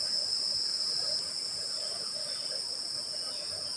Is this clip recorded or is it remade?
recorded